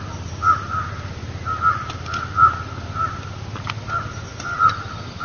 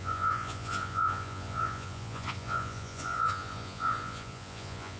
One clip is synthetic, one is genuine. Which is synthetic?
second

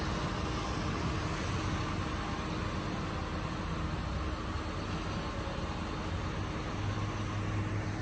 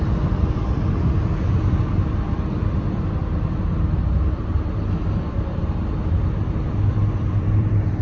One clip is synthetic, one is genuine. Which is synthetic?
second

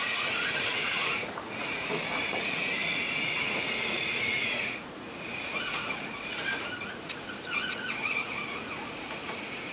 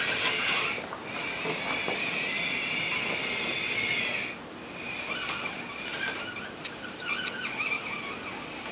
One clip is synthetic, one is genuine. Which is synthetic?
first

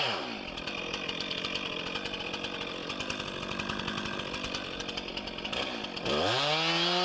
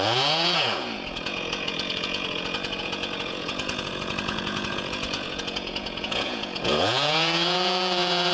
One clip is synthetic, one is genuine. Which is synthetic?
second